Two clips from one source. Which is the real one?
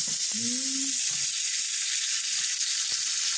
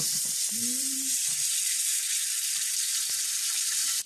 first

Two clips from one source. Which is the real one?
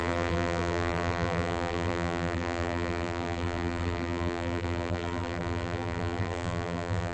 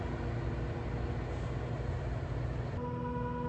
second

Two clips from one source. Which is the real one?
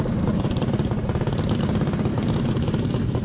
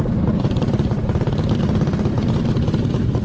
first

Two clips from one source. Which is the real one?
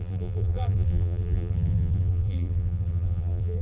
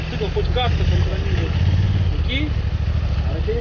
second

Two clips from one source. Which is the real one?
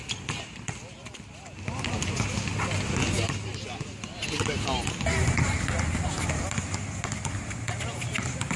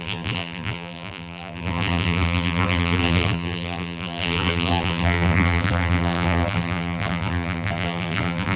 first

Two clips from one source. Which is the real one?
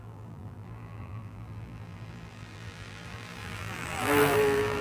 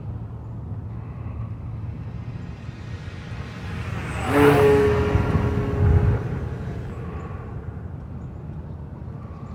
second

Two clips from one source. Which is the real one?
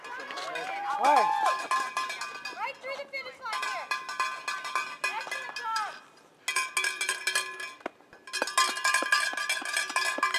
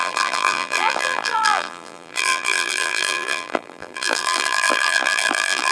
first